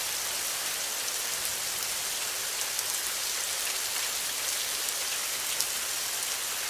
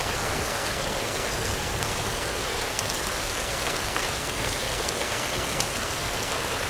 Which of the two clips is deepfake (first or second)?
second